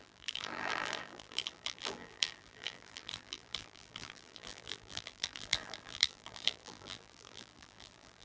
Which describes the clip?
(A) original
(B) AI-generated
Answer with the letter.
B